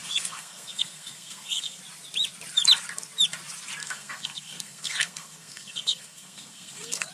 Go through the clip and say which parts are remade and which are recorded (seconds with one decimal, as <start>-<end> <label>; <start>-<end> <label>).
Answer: 0.0-1.8 remade; 1.8-3.8 recorded; 3.8-7.1 remade